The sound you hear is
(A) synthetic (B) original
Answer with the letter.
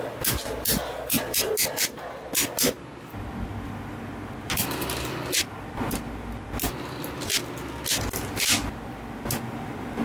B